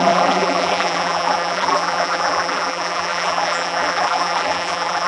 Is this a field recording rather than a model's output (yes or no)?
no